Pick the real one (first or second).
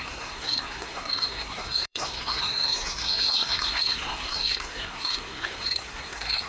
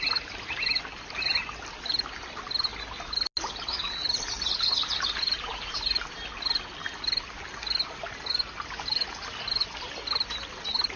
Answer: second